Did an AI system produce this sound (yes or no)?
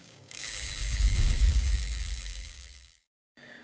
yes